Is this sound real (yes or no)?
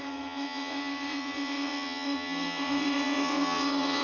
no